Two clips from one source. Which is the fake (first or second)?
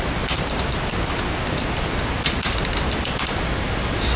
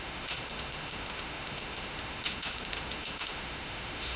second